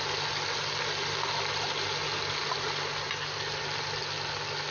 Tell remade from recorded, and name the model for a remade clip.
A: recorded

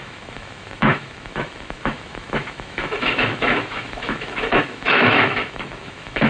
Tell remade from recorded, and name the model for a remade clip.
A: remade, autoencoder, DAC-VAE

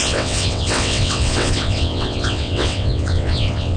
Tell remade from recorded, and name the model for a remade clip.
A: remade, vocoder, WaveNeXt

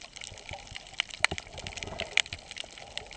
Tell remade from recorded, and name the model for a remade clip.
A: recorded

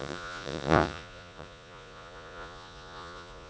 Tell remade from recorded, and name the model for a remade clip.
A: remade, vocoder, Vocos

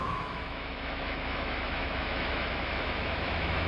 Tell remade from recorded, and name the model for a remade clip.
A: remade, autoencoder, DAC-VAE